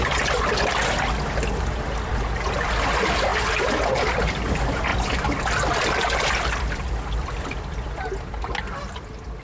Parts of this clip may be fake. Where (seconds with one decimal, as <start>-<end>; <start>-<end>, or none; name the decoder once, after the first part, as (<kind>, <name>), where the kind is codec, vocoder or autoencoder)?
4.9-5.4 (vocoder, BigVGAN v2)